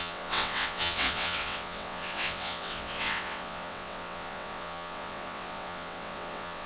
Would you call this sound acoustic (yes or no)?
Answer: no